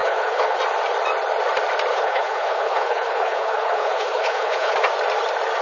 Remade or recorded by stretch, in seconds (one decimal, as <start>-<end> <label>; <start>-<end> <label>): 0.0-0.6 remade; 0.6-1.9 recorded; 1.9-4.7 remade; 4.7-5.6 recorded